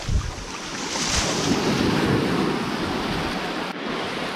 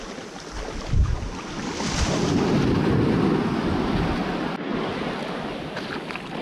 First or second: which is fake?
first